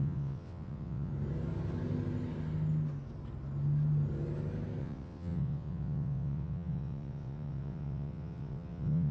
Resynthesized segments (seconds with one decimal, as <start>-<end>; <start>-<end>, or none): 0.0-1.1; 4.8-9.1